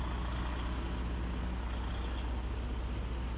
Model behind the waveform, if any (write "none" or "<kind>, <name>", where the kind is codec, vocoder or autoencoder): none